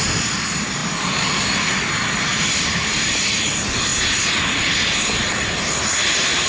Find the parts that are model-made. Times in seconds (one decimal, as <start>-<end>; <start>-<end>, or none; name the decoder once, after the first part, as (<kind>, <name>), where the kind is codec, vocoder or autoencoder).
none